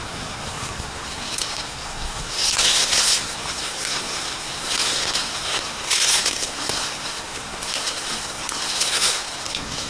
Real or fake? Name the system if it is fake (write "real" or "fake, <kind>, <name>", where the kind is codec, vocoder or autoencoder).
fake, codec, SNAC